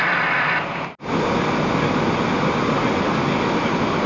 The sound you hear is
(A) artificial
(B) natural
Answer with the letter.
B